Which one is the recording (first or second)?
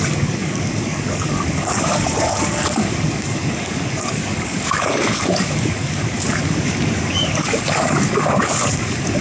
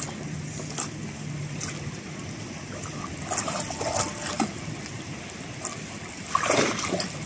second